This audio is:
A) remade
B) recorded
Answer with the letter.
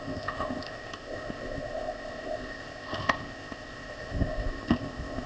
A